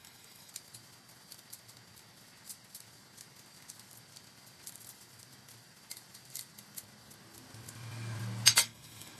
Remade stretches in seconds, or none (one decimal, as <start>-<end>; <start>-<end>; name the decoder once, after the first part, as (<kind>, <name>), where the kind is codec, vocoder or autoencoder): 0.0-0.5 (codec, DAC); 8.5-9.2